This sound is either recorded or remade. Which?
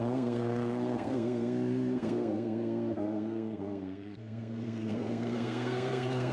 remade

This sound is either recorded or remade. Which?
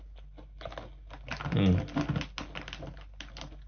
recorded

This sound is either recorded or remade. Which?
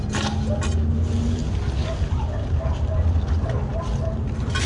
recorded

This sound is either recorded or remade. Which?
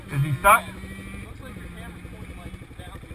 recorded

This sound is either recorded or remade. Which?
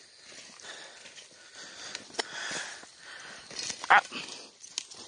recorded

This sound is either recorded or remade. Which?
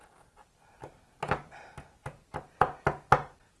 recorded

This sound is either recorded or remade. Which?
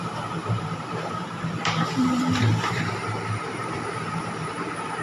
remade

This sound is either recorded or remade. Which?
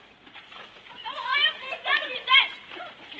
remade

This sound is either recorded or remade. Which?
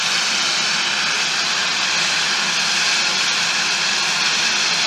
recorded